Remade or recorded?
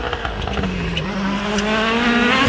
recorded